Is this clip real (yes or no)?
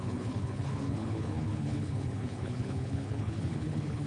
no